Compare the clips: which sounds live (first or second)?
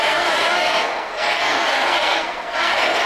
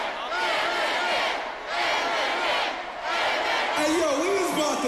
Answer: second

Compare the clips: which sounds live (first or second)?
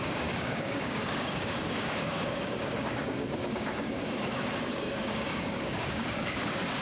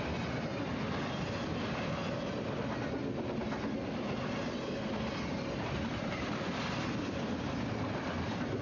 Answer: second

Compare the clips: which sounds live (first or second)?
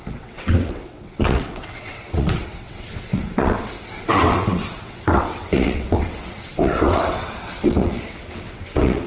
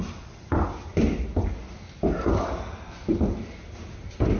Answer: second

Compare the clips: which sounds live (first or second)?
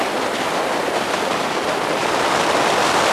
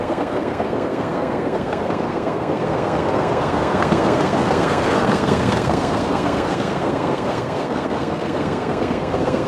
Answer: first